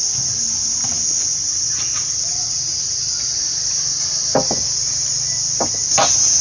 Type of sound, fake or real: real